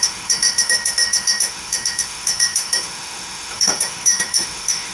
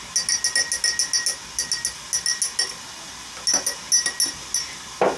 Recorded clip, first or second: second